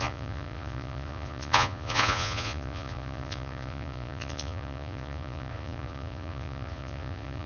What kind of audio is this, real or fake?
fake